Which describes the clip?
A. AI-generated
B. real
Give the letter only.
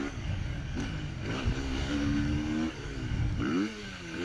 A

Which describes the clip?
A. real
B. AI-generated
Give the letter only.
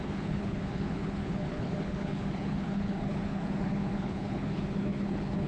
B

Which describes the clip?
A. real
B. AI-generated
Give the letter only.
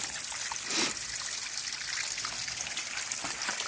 A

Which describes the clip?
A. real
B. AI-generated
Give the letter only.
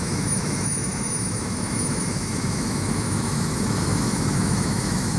B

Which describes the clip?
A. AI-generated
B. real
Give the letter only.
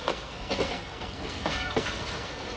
A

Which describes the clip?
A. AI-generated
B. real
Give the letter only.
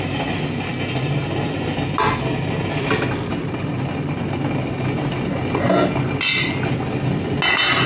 B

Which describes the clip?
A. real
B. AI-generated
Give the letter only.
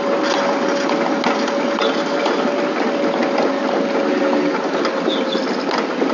A